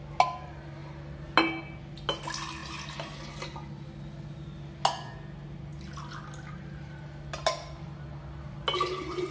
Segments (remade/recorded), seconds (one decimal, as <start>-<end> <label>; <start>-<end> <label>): 0.0-9.3 recorded